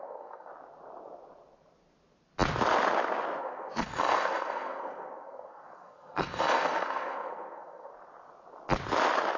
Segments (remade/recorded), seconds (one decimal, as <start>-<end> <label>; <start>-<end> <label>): 0.0-0.5 remade; 0.5-3.4 recorded; 3.4-7.9 remade; 7.9-9.4 recorded